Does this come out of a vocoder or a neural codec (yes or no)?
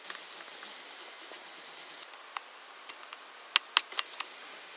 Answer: no